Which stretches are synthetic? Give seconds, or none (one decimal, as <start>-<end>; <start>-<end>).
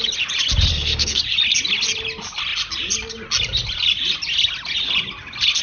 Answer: 0.7-1.2